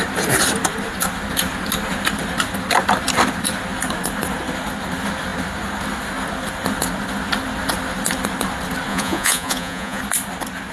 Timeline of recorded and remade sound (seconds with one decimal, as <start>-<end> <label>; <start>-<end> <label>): 0.0-8.9 recorded; 8.9-10.0 remade; 10.0-10.7 recorded